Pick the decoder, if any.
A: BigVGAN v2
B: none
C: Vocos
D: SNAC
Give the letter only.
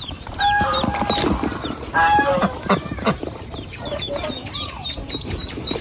A